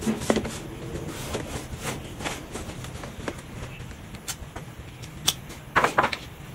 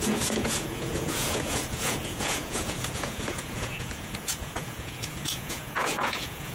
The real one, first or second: first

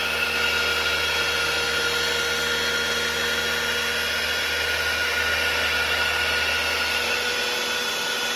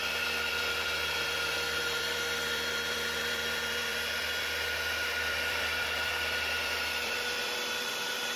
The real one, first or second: first